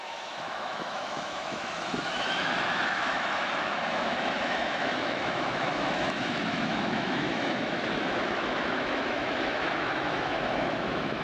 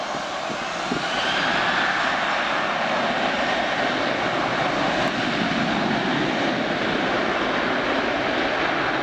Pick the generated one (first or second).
first